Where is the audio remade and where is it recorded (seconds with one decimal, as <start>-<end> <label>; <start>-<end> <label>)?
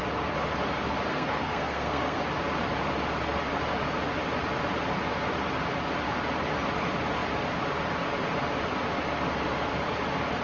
0.0-1.1 recorded; 1.1-2.2 remade; 2.2-10.4 recorded